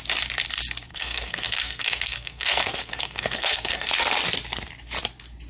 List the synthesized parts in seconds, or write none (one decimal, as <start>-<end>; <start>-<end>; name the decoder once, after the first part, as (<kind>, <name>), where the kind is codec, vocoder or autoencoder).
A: 0.9-3.9 (codec, SNAC)